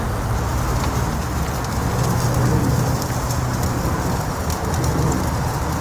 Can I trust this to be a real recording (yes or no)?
yes